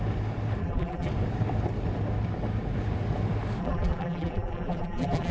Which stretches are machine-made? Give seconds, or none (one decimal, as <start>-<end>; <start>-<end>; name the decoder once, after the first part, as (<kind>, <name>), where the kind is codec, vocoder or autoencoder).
0.6-1.1 (vocoder, BigVGAN v2); 3.6-5.3